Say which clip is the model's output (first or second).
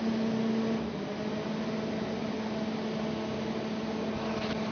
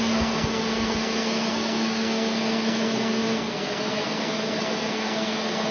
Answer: second